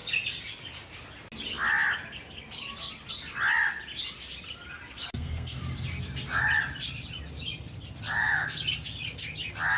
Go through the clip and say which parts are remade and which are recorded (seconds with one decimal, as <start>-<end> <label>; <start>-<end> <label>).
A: 0.0-5.1 recorded; 5.1-5.6 remade; 5.6-9.8 recorded